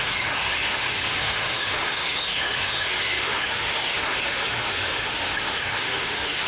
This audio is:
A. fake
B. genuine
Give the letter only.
A